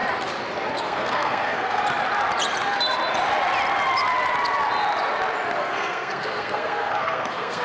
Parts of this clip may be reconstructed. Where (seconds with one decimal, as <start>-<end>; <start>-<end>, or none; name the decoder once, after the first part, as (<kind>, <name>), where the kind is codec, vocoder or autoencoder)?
0.7-1.8 (codec, SNAC); 5.6-7.6